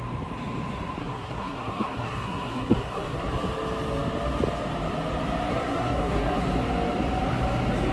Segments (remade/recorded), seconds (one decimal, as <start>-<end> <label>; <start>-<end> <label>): 0.0-1.0 recorded; 1.0-3.3 remade; 3.3-5.5 recorded; 5.5-6.4 remade; 6.4-7.9 recorded